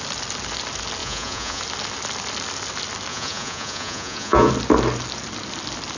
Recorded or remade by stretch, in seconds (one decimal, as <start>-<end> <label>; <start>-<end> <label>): 0.0-1.0 recorded; 1.0-1.6 remade; 1.6-3.1 recorded; 3.1-4.5 remade; 4.5-6.0 recorded